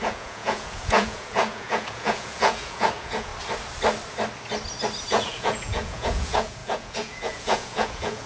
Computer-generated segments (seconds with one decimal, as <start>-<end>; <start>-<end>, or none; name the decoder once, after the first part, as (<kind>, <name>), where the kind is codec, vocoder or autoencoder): 0.0-3.3 (vocoder, Vocos); 5.1-8.3